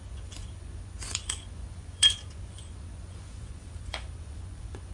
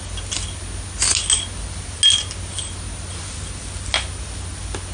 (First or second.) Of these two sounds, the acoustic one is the second